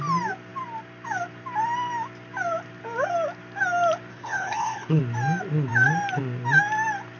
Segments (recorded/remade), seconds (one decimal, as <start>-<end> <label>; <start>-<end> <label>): 0.0-4.1 recorded; 4.1-5.0 remade; 5.0-7.2 recorded